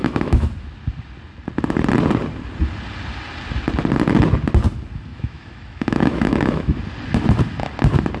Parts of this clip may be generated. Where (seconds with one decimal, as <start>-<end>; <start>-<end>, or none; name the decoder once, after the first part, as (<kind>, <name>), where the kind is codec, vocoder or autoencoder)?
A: 0.0-0.5 (autoencoder, DAC-VAE); 5.1-6.8